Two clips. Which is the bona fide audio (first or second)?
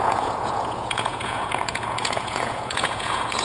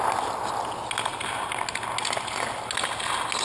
second